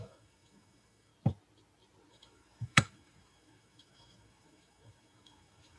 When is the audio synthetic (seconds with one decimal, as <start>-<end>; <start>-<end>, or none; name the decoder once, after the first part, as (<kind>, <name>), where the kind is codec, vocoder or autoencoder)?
0.0-1.1 (autoencoder, DAC-VAE); 2.1-5.8